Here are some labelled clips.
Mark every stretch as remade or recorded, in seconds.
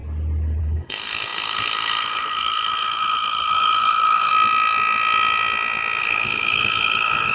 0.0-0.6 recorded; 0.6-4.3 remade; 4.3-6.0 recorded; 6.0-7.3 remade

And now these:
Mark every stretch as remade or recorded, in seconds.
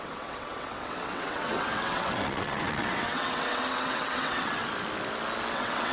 0.0-4.6 remade; 4.6-5.5 recorded; 5.5-5.9 remade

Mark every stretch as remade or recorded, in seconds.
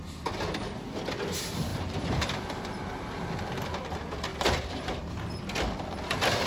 0.0-1.7 recorded; 1.7-3.3 remade; 3.3-4.3 recorded; 4.3-5.0 remade; 5.0-6.5 recorded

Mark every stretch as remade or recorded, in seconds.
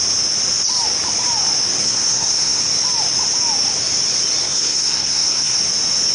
0.0-1.8 recorded; 1.8-2.6 remade; 2.6-4.4 recorded; 4.4-5.6 remade; 5.6-6.1 recorded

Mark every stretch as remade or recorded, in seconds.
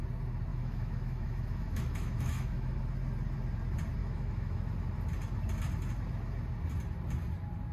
0.0-0.5 recorded; 0.5-2.8 remade; 2.8-4.0 recorded; 4.0-4.6 remade; 4.6-7.7 recorded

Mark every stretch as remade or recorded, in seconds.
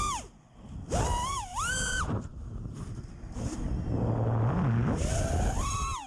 0.0-6.1 recorded